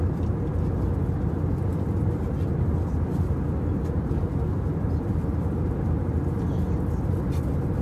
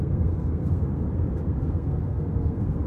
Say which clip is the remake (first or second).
second